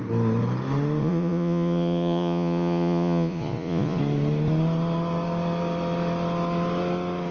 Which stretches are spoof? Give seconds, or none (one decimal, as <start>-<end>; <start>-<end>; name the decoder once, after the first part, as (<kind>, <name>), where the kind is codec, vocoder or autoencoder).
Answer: 1.0-4.0 (vocoder, Vocos)